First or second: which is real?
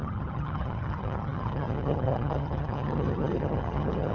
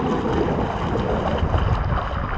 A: second